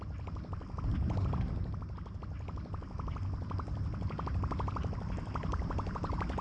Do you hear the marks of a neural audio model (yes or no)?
no